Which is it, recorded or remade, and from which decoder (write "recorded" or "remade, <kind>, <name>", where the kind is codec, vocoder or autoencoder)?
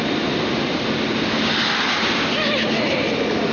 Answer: recorded